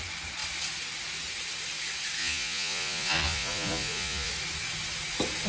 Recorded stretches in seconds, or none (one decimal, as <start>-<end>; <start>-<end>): 0.0-2.2; 4.3-5.5